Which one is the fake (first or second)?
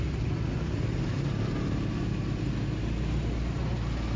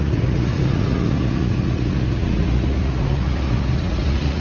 second